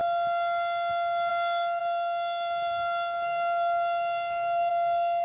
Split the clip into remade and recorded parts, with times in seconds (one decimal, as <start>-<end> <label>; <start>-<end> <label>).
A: 0.0-1.8 recorded; 1.8-4.7 remade; 4.7-5.2 recorded